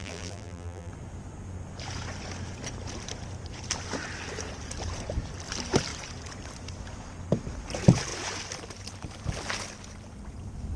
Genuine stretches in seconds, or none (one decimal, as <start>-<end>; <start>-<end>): 0.9-10.8